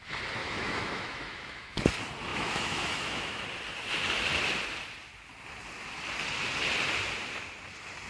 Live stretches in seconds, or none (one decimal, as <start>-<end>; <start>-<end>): 0.0-0.4; 1.9-2.3; 3.5-8.1